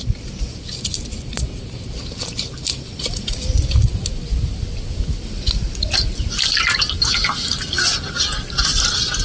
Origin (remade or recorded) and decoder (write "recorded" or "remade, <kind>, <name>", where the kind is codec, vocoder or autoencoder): recorded